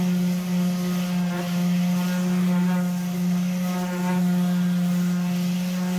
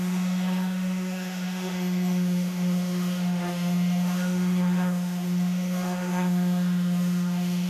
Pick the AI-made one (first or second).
second